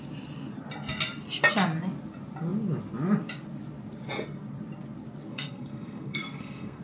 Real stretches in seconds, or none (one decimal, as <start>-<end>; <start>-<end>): 0.0-5.3